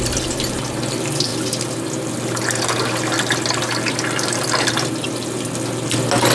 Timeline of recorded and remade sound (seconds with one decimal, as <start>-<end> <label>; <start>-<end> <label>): 0.0-6.3 recorded